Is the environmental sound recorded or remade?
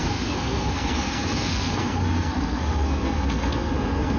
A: remade